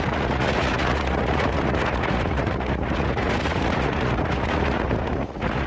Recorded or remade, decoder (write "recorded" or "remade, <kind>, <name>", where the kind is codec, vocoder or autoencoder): remade, vocoder, Vocos